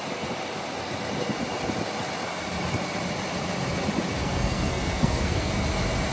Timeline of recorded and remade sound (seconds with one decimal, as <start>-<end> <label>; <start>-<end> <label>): 0.0-4.2 recorded; 4.2-5.5 remade; 5.5-6.1 recorded